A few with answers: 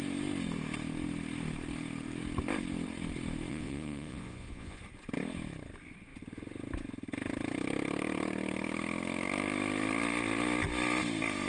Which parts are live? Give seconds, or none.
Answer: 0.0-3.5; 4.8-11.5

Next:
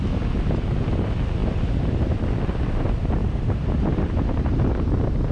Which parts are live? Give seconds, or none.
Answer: 0.0-1.4; 2.2-3.2; 4.3-5.3

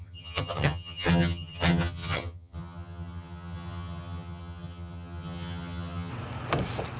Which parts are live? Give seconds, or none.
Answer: 6.1-7.0

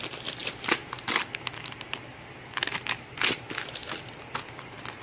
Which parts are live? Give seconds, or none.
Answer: 0.0-5.0

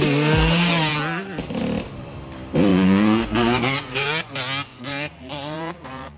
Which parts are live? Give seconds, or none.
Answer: 0.0-2.7; 4.3-4.7

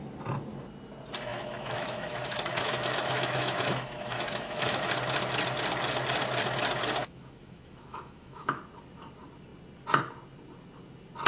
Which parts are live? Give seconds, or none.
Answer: 0.0-1.3; 4.8-7.0; 8.6-11.3

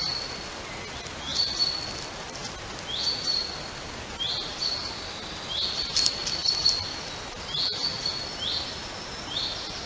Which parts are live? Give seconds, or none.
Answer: 0.0-9.9